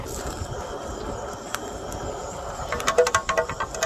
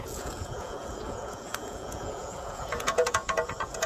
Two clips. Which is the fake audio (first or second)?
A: second